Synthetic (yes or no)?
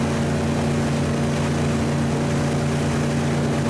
no